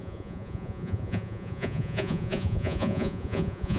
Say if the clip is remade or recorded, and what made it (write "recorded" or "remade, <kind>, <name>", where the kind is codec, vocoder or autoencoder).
remade, vocoder, Vocos